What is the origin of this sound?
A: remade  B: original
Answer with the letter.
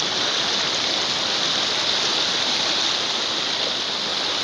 B